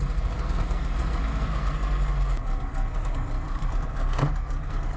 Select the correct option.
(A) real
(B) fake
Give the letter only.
B